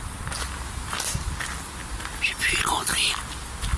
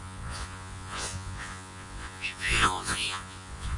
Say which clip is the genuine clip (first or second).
first